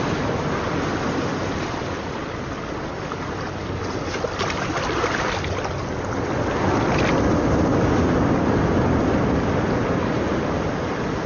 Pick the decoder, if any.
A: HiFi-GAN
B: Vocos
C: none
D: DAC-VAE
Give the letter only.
C